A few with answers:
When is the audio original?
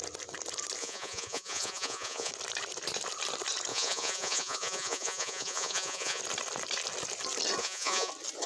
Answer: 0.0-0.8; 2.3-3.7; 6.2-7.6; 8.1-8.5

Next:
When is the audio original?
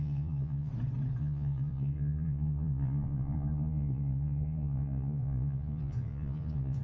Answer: 0.7-1.2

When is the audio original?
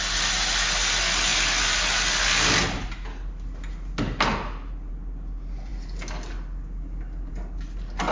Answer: 0.0-8.1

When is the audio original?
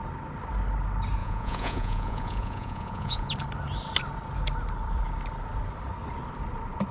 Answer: 0.0-1.2; 3.3-6.9